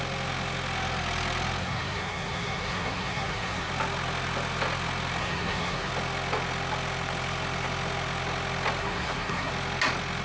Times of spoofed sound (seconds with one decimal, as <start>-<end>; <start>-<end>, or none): 1.6-3.7; 5.2-5.9; 8.8-9.5